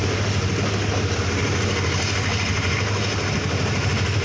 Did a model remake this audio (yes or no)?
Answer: no